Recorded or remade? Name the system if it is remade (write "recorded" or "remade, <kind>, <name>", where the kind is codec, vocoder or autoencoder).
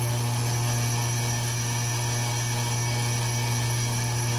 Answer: recorded